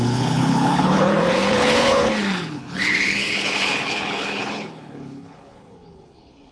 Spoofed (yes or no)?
yes